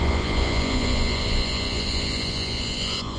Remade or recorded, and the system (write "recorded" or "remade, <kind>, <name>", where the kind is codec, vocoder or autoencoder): remade, vocoder, Vocos